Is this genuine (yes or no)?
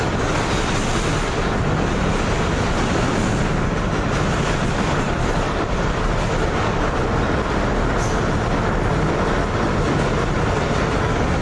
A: yes